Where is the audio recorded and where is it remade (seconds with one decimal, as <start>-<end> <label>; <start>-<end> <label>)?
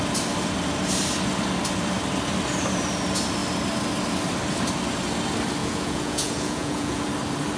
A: 0.0-5.6 recorded; 5.6-7.0 remade; 7.0-7.6 recorded